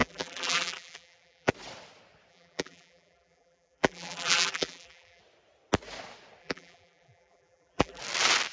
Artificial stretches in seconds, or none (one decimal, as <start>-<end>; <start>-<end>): 0.0-1.5; 2.3-5.2; 6.4-8.0